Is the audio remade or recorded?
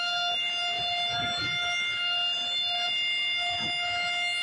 recorded